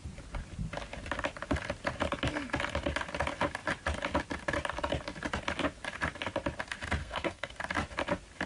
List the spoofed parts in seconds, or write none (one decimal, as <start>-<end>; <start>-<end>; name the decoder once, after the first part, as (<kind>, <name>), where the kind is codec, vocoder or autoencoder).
7.0-7.5 (codec, SNAC)